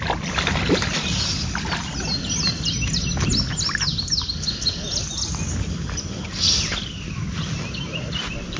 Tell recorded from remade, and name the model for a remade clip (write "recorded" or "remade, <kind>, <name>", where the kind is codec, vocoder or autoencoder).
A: recorded